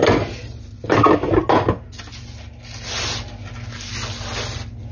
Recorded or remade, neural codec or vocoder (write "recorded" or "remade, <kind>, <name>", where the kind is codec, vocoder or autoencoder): recorded